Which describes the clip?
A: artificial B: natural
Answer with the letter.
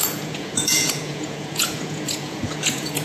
A